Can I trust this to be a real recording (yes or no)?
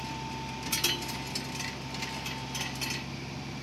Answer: yes